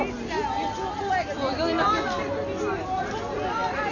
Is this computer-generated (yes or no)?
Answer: no